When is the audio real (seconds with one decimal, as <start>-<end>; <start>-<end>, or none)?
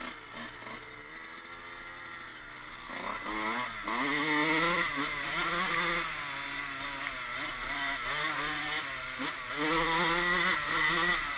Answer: 0.0-11.4